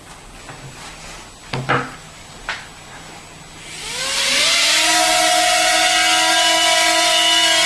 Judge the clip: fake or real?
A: real